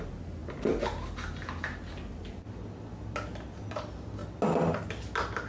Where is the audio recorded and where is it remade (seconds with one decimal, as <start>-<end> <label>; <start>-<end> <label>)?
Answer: 0.0-5.5 recorded